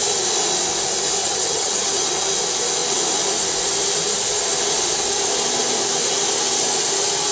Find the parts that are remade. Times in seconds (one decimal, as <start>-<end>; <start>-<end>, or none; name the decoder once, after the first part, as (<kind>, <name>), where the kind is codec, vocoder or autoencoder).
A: 1.2-1.9 (vocoder, HiFi-GAN)